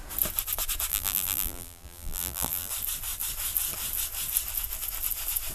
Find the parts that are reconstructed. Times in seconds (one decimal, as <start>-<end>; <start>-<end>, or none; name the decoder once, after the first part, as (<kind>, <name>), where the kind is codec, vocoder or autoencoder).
0.9-2.7 (vocoder, BigVGAN v2)